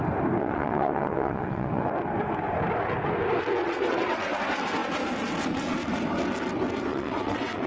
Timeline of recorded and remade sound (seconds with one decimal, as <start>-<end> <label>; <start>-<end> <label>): 0.0-0.4 recorded; 0.4-1.9 remade; 1.9-3.6 recorded; 3.6-4.2 remade; 4.2-6.9 recorded; 6.9-7.7 remade